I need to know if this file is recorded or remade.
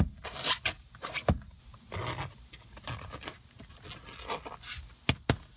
recorded